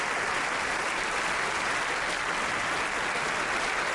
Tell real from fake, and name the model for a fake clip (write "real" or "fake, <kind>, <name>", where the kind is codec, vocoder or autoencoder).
real